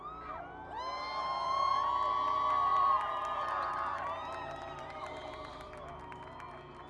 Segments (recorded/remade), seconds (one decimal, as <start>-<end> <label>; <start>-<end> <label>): 0.0-2.7 recorded; 2.7-6.0 remade; 6.0-6.9 recorded